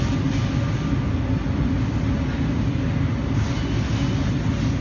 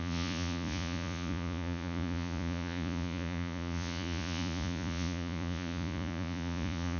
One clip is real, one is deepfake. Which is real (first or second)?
first